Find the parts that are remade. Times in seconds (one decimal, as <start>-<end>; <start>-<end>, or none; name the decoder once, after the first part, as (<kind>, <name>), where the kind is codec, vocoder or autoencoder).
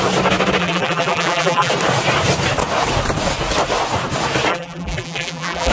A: 0.6-1.7 (vocoder, BigVGAN v2); 4.5-5.7